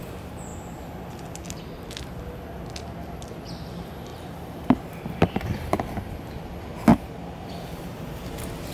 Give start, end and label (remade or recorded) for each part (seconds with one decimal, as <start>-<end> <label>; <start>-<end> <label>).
0.0-4.1 recorded; 4.1-5.4 remade; 5.4-6.9 recorded; 6.9-7.5 remade; 7.5-8.7 recorded